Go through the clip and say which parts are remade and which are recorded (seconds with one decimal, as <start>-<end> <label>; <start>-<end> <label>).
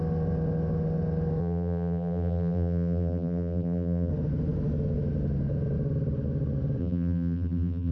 0.0-1.4 recorded; 1.4-4.1 remade; 4.1-6.8 recorded; 6.8-7.9 remade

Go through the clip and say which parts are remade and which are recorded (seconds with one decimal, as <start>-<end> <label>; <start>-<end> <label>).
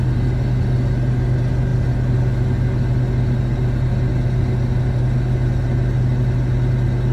0.0-7.1 recorded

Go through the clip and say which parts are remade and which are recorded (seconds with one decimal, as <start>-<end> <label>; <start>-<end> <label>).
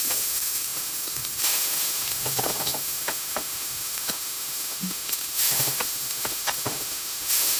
0.0-7.6 remade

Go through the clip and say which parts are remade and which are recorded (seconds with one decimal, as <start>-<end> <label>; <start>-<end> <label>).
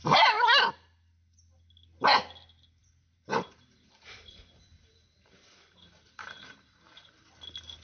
0.0-0.7 remade; 0.7-2.8 recorded; 2.8-7.2 remade; 7.2-7.8 recorded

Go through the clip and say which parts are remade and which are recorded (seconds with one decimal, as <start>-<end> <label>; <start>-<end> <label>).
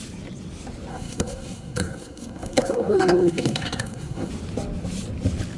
0.0-0.9 recorded; 0.9-4.3 remade; 4.3-5.6 recorded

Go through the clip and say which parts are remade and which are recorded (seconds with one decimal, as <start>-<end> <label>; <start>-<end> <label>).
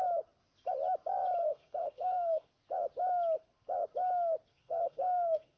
0.0-1.4 recorded; 1.4-2.5 remade; 2.5-4.5 recorded; 4.5-5.6 remade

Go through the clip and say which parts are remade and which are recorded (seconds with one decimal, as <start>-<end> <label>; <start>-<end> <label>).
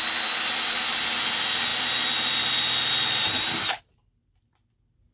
0.0-5.1 recorded